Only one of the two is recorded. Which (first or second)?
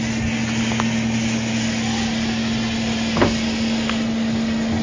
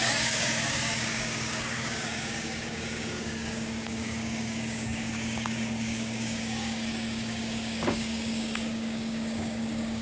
first